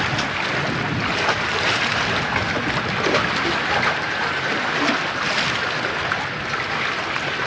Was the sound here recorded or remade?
recorded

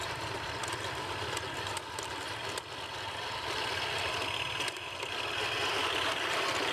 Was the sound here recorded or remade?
recorded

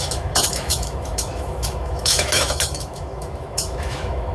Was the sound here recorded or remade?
remade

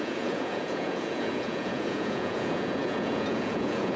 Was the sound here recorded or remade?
remade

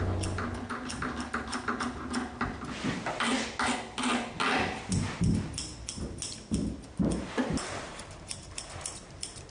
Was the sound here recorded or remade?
recorded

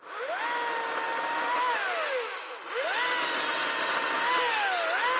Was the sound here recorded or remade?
recorded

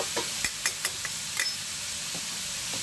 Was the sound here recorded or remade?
recorded